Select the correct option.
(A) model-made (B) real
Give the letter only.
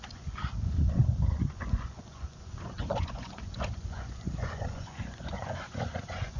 A